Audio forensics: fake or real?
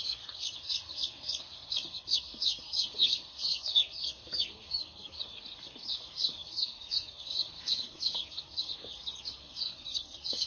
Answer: fake